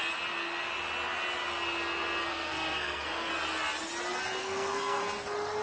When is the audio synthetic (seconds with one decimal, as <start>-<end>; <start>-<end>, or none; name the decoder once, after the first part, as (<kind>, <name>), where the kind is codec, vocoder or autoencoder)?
2.3-3.3 (codec, SNAC); 4.4-5.0